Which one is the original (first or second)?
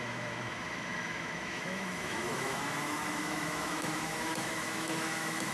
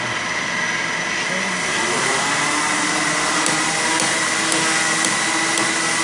second